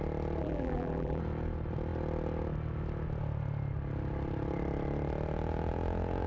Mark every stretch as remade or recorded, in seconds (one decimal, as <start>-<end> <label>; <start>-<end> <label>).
0.0-0.4 recorded; 0.4-1.2 remade; 1.2-6.3 recorded